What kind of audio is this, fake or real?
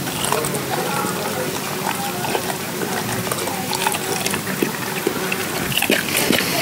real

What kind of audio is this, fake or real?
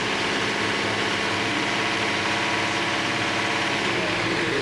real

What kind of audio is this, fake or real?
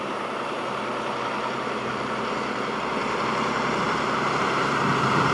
fake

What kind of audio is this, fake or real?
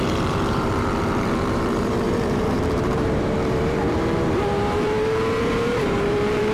fake